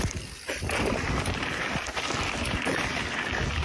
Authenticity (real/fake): real